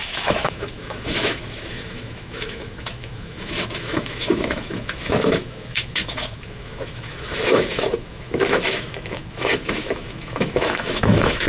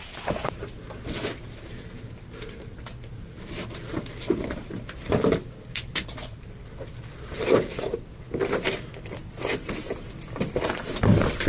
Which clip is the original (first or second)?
second